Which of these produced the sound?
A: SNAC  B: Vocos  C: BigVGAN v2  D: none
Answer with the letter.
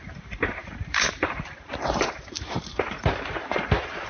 C